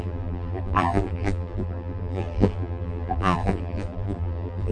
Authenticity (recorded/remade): remade